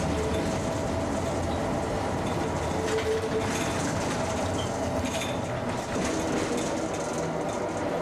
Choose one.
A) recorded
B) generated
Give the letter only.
A